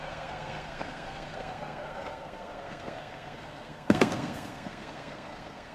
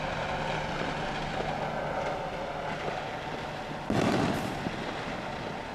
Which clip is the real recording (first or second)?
second